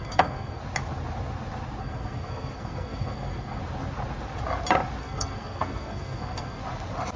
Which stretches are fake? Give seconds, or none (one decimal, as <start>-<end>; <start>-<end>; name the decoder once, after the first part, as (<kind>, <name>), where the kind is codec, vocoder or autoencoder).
0.0-0.6 (codec, SNAC); 1.8-3.6; 5.0-6.6